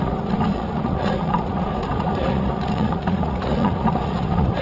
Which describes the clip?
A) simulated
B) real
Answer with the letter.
A